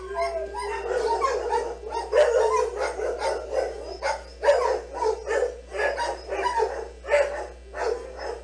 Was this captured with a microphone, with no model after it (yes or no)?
yes